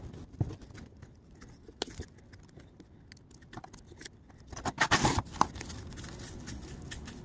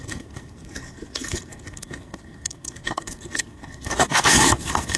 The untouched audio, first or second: first